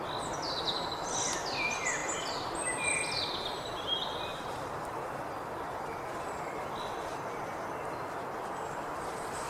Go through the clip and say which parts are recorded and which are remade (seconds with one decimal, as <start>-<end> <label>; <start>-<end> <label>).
0.0-4.3 recorded; 4.3-5.2 remade; 5.2-9.5 recorded